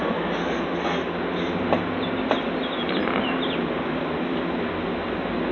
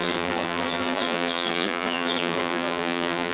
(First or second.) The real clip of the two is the first